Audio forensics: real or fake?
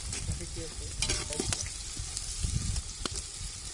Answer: real